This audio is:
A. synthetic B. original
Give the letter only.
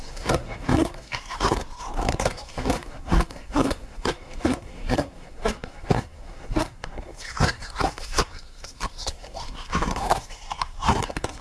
A